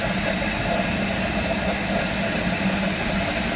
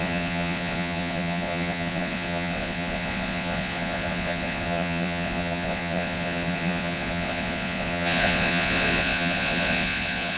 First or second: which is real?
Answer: first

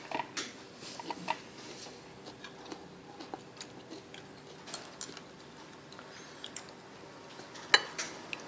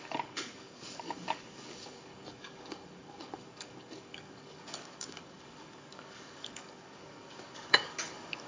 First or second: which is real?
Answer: first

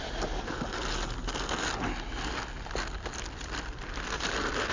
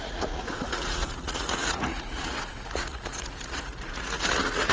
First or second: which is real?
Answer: first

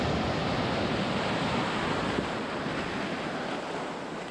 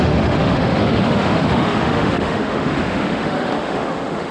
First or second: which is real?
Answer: first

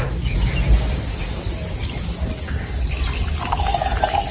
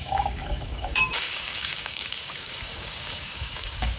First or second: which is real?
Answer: first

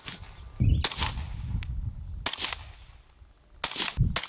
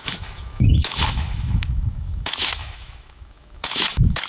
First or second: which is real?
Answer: first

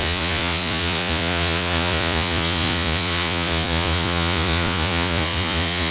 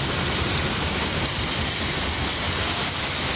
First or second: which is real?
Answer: second